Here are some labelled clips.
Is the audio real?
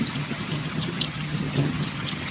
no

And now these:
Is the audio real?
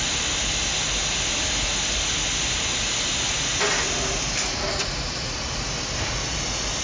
yes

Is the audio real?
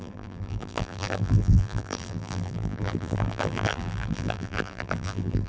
no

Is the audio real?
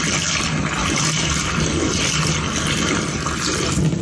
yes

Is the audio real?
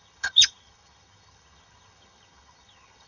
no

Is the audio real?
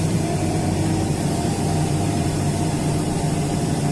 no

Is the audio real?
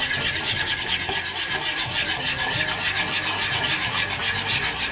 yes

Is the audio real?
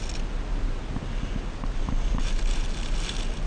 yes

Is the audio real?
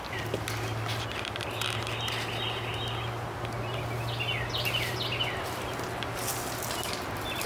yes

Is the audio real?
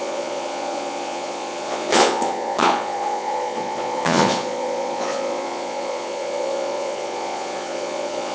no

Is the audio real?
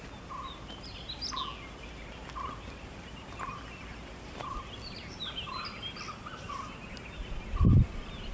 yes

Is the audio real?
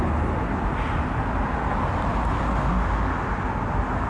yes